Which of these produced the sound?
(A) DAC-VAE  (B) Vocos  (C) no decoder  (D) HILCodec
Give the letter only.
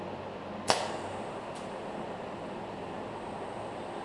C